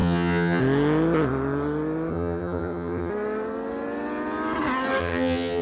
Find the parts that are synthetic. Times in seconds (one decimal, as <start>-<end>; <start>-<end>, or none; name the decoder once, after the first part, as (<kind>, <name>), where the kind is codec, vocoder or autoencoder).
0.0-0.6 (vocoder, HiFi-GAN); 2.1-3.1; 5.0-5.6